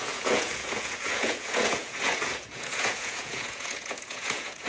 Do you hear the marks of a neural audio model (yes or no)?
yes